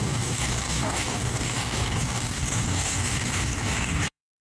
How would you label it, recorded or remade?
remade